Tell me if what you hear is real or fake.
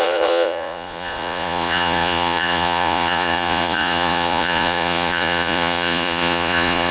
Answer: fake